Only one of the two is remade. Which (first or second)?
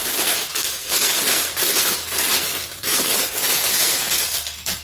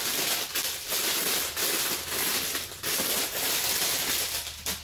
first